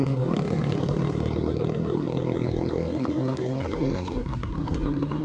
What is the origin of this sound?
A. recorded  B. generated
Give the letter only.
B